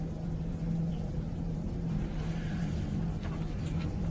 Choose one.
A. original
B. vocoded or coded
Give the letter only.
B